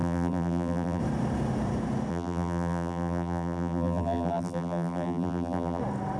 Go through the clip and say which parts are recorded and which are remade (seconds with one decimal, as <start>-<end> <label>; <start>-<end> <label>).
0.0-1.0 remade; 1.0-2.1 recorded; 2.1-5.8 remade; 5.8-6.2 recorded

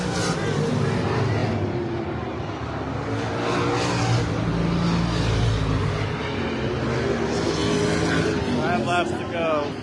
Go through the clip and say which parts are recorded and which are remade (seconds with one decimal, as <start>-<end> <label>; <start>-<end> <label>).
0.0-9.8 recorded

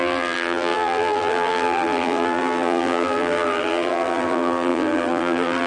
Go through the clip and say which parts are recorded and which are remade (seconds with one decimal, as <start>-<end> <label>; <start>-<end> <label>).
0.0-5.7 remade

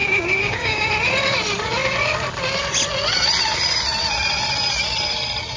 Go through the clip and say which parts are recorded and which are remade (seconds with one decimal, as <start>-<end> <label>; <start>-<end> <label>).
0.0-0.9 remade; 0.9-5.6 recorded

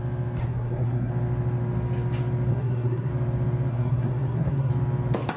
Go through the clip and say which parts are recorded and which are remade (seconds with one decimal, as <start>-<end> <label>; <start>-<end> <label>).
0.0-0.4 recorded; 0.4-1.1 remade; 1.1-2.5 recorded; 2.5-3.1 remade; 3.1-3.7 recorded; 3.7-4.7 remade; 4.7-5.4 recorded